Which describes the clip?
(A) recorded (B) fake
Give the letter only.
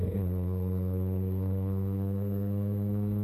B